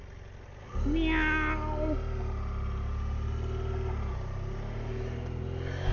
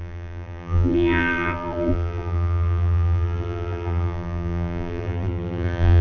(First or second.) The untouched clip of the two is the first